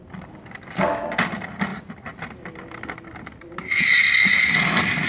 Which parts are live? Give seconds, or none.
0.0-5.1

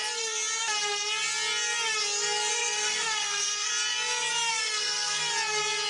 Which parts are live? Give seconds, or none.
0.0-2.5; 3.7-4.5; 5.2-5.9